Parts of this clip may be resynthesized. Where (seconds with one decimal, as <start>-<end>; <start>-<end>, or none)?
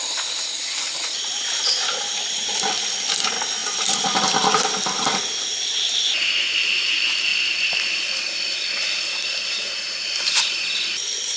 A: none